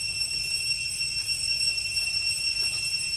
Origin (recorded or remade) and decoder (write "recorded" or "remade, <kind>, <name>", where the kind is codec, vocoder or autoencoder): recorded